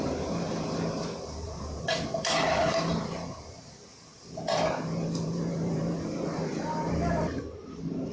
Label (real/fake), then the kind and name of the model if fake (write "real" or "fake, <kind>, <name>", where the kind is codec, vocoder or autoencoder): fake, vocoder, BigVGAN v2